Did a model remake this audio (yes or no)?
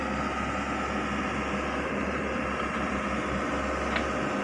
no